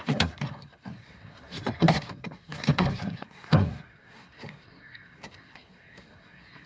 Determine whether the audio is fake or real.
fake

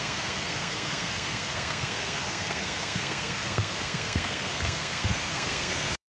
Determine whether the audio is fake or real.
fake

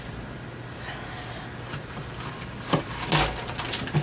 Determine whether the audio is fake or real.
real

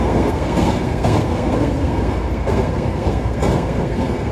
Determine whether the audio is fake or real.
fake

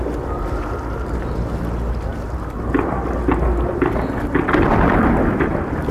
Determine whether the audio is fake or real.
real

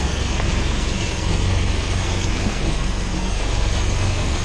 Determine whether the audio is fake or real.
fake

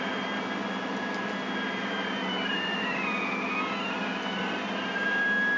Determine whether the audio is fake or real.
real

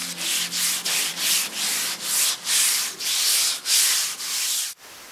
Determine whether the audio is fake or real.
real